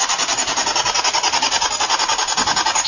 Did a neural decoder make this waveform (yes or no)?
no